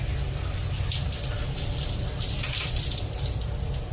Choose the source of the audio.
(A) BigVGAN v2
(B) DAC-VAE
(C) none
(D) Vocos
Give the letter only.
A